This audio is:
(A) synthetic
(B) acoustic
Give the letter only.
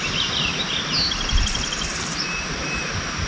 B